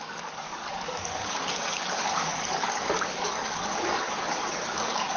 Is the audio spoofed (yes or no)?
yes